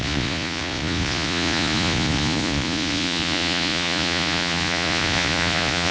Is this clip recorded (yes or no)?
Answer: no